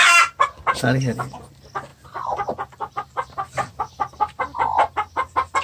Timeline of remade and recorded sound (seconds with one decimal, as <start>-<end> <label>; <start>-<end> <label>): 0.0-5.6 recorded